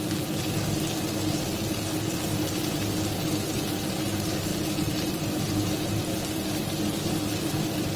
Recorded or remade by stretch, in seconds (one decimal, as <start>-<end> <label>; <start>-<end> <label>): 0.0-8.0 recorded